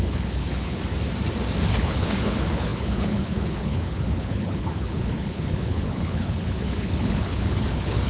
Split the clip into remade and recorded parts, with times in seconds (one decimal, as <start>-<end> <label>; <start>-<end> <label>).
0.0-0.8 remade; 0.8-1.7 recorded; 1.7-8.1 remade